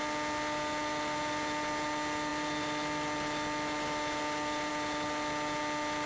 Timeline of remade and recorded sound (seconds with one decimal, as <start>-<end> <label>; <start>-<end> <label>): 0.0-6.1 recorded